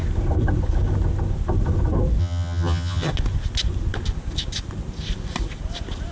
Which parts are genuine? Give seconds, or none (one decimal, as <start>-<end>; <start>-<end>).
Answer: 0.0-2.2; 3.1-6.1